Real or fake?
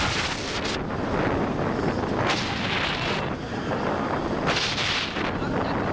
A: real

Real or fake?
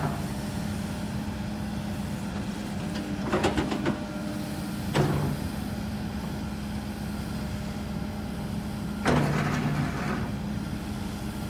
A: real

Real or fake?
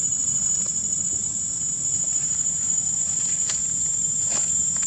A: real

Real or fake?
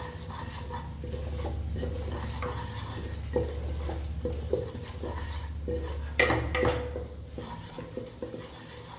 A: real